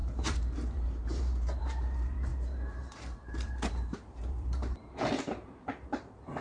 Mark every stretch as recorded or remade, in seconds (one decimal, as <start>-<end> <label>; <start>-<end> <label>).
0.0-6.4 remade